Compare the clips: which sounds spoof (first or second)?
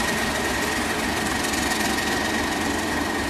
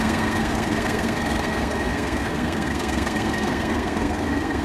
second